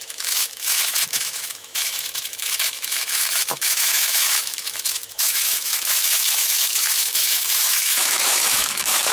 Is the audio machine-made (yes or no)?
yes